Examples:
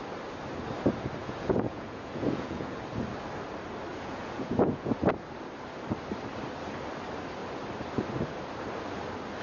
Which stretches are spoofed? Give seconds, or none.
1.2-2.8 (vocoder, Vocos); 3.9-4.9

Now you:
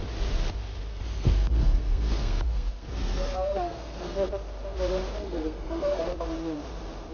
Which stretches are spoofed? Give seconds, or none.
0.9-4.3 (codec, SNAC); 5.2-6.0

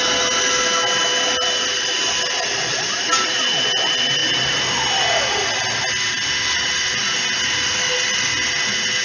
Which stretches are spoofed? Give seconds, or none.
none